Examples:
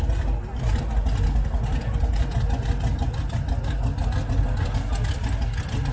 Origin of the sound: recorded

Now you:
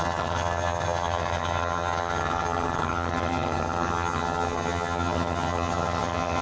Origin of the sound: remade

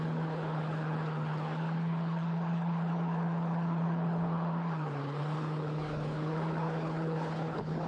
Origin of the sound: remade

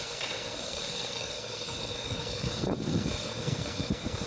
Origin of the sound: remade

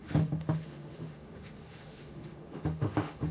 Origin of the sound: remade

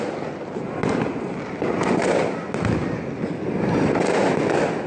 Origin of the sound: recorded